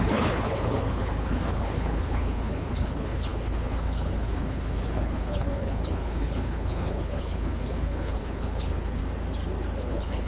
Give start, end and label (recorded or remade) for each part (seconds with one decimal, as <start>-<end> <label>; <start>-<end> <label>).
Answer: 0.0-9.0 remade; 9.0-9.9 recorded; 9.9-10.3 remade